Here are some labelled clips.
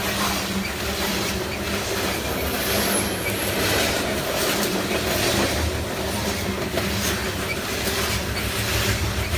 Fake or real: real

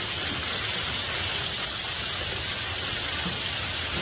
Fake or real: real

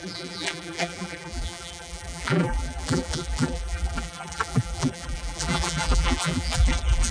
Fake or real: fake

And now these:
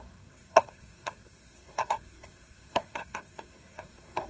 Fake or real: fake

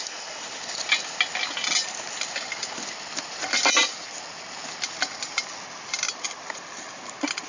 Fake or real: real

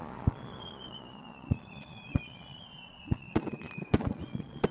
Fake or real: fake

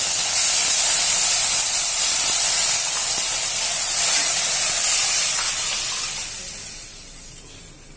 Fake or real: real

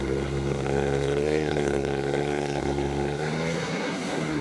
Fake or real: fake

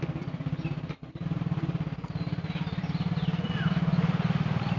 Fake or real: fake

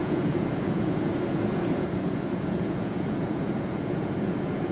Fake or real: fake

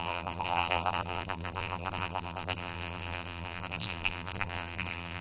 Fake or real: fake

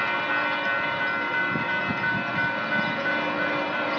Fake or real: real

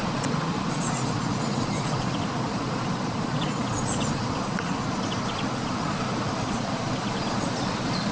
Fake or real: fake